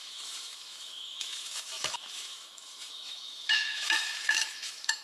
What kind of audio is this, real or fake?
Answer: fake